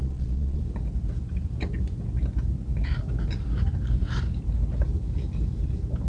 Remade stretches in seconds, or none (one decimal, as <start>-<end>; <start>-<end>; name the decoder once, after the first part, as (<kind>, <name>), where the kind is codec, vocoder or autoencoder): 0.0-0.6 (vocoder, Vocos)